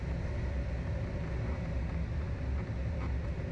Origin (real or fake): real